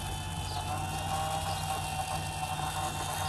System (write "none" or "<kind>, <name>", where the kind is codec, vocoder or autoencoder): none